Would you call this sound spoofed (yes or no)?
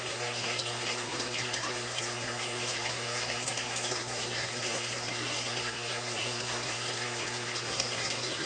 yes